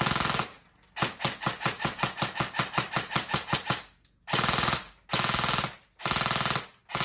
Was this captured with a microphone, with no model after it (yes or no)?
yes